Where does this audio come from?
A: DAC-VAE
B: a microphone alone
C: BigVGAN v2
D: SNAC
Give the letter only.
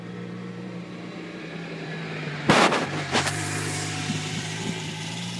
C